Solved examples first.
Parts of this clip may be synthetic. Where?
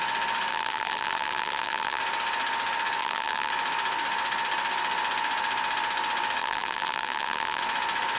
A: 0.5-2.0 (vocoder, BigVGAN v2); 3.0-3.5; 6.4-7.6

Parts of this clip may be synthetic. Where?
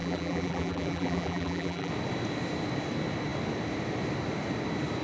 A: 0.0-1.9 (vocoder, BigVGAN v2)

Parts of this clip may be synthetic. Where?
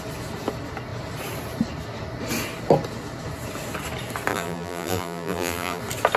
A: 4.3-5.8 (vocoder, BigVGAN v2)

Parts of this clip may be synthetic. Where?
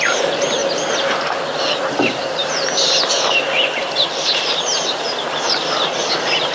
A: 0.0-4.7 (vocoder, BigVGAN v2); 5.4-6.5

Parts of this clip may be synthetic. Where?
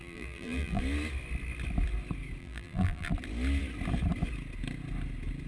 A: 0.0-0.8 (vocoder, BigVGAN v2); 2.4-3.1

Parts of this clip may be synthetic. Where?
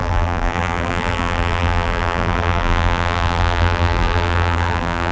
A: 0.0-5.1 (vocoder, BigVGAN v2)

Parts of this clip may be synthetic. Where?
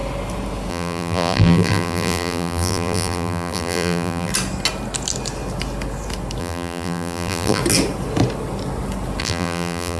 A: 0.7-4.3 (vocoder, BigVGAN v2); 6.4-7.6; 9.2-10.0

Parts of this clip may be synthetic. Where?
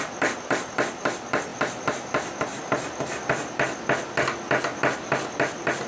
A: none